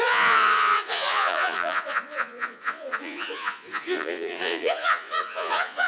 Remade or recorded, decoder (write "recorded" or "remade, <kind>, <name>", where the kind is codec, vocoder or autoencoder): remade, vocoder, Vocos